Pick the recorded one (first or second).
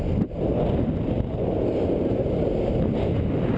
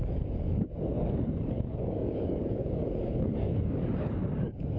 first